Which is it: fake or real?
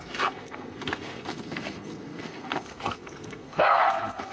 fake